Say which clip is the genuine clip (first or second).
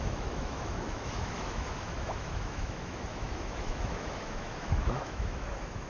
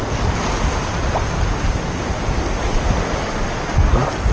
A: second